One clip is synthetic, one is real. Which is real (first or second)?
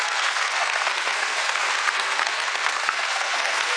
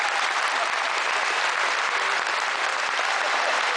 second